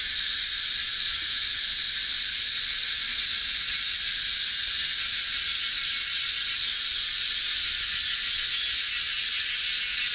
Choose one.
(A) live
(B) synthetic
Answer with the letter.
A